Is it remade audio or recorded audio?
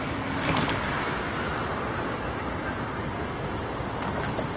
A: recorded